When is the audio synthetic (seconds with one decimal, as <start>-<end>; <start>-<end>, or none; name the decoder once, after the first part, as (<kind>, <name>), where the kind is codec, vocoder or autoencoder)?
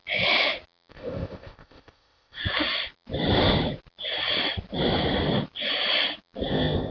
0.9-2.4 (codec, ZipCodec); 6.5-6.9